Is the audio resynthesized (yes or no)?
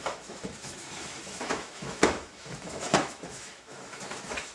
yes